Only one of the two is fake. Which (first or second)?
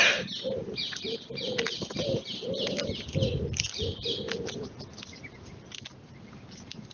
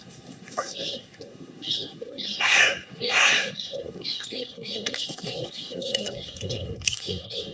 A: second